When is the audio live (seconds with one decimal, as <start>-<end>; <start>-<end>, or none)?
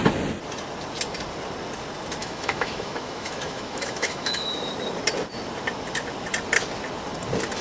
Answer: 0.0-2.2; 4.7-7.6